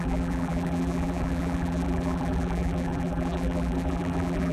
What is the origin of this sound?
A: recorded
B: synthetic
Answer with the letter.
B